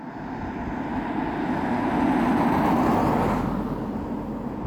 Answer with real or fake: real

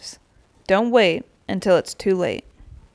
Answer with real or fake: real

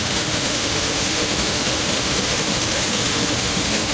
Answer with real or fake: fake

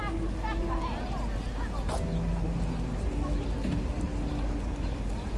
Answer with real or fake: real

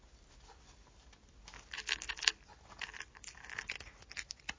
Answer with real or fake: real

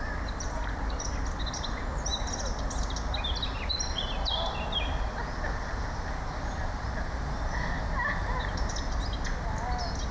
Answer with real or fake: real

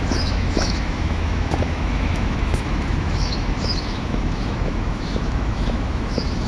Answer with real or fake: fake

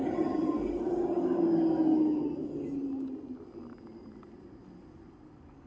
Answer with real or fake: real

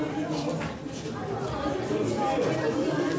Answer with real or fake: real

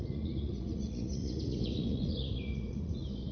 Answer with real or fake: fake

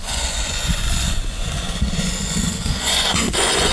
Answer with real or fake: fake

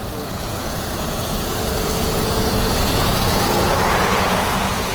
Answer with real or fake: fake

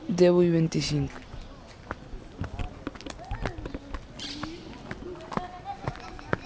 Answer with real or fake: real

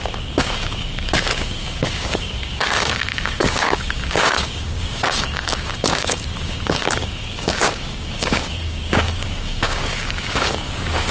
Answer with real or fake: fake